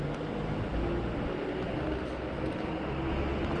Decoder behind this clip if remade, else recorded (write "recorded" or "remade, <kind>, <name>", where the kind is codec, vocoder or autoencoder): recorded